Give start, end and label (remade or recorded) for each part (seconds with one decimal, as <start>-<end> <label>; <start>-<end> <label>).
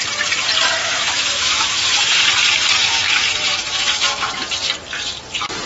0.0-0.8 recorded; 0.8-2.2 remade; 2.2-2.8 recorded; 2.8-4.4 remade; 4.4-5.7 recorded